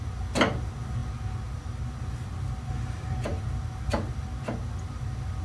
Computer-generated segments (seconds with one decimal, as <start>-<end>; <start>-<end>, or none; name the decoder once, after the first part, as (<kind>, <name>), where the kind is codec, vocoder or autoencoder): none